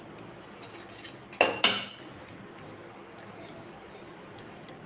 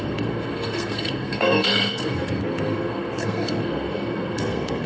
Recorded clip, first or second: first